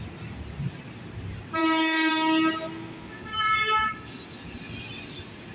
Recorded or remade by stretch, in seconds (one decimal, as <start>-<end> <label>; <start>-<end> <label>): 0.0-1.6 recorded; 1.6-2.1 remade; 2.1-3.2 recorded; 3.2-4.2 remade; 4.2-5.5 recorded